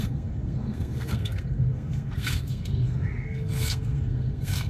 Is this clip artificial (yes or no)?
yes